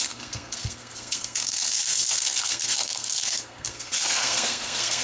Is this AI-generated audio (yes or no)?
yes